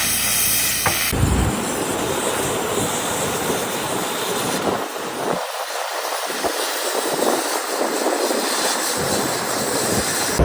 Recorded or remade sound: recorded